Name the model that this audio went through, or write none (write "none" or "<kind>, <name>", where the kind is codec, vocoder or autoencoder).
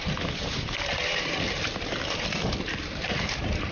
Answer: none